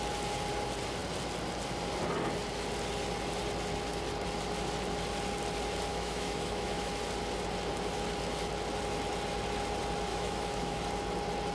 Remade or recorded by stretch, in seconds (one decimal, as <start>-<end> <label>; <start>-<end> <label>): 0.0-5.9 recorded; 5.9-6.9 remade; 6.9-10.1 recorded; 10.1-10.8 remade; 10.8-11.5 recorded